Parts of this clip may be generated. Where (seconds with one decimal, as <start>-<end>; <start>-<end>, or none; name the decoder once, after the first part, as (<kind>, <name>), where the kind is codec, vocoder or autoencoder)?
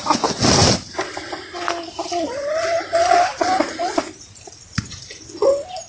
none